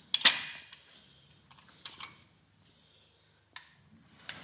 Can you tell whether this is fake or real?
real